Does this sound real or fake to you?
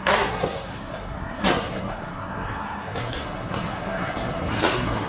fake